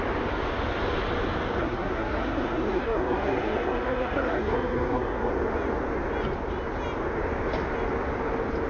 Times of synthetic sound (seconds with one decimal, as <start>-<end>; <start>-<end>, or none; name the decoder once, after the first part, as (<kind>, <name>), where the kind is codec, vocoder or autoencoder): 1.6-5.3 (codec, SNAC)